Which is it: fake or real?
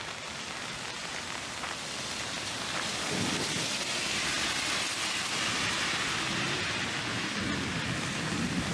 real